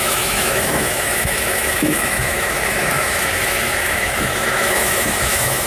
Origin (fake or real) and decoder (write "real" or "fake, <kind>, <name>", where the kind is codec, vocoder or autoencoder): fake, autoencoder, DAC-VAE